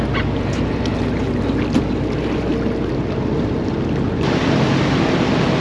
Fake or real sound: real